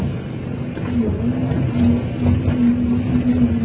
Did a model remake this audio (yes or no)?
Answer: no